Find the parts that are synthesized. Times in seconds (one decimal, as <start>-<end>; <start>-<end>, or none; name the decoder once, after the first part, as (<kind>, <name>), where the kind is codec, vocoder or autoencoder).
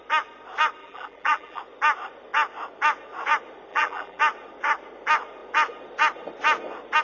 0.8-1.6 (vocoder, BigVGAN v2); 3.7-4.2